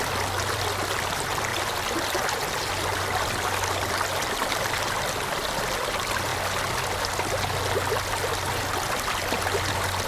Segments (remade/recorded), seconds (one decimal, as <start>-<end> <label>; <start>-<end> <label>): 0.0-1.5 remade; 1.5-2.4 recorded; 2.4-6.3 remade; 6.3-9.7 recorded; 9.7-10.1 remade